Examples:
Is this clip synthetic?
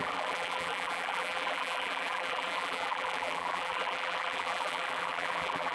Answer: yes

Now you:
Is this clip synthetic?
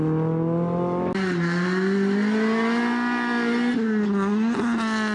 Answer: no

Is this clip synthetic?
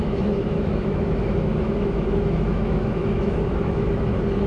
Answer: yes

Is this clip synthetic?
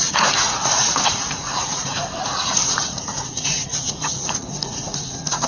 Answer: yes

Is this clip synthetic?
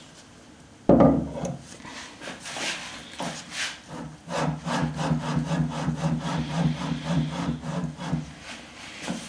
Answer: no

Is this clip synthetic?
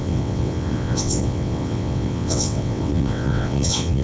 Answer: yes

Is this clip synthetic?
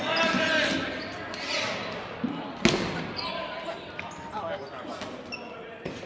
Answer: no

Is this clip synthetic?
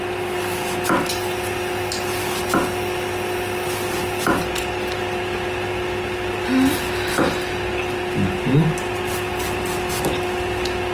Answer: no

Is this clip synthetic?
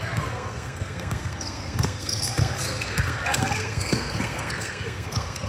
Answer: yes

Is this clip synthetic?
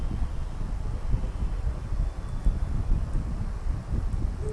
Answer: no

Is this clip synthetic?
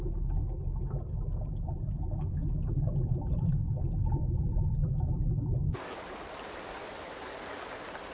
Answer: no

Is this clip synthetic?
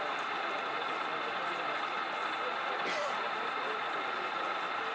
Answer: no